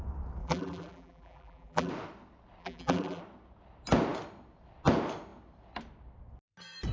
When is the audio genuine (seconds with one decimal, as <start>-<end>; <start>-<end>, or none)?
0.0-0.4; 1.9-2.6; 3.2-6.9